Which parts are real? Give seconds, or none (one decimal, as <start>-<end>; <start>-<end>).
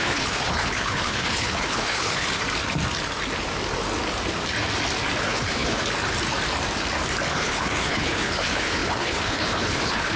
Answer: 2.4-5.2; 5.8-7.3